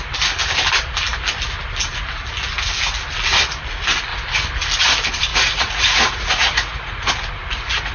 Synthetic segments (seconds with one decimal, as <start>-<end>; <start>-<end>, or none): 5.3-7.1